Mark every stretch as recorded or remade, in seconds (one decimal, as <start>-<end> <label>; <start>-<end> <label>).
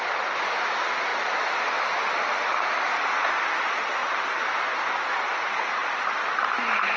0.0-7.0 recorded